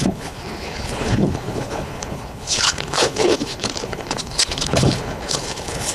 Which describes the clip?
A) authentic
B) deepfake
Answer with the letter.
B